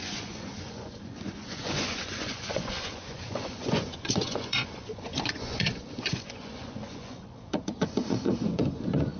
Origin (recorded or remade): remade